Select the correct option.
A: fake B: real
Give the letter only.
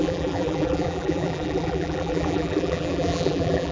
A